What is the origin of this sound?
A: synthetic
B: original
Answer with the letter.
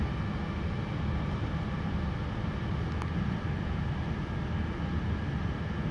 B